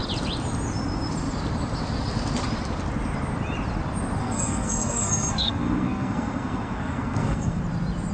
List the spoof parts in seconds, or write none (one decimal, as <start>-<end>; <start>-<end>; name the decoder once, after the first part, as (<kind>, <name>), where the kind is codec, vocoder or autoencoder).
4.2-7.6 (codec, SNAC)